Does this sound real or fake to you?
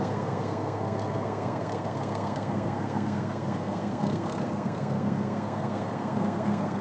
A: fake